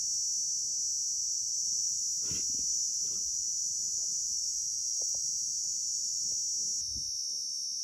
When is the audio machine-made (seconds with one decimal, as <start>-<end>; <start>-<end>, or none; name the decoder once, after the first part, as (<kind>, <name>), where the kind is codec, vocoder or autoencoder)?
1.2-2.0 (vocoder, BigVGAN v2); 2.7-6.3